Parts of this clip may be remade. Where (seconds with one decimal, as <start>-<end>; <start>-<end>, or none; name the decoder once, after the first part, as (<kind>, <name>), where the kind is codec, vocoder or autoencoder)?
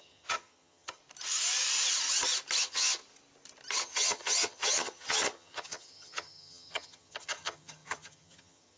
0.0-1.0 (vocoder, HiFi-GAN); 2.6-3.0; 3.8-8.8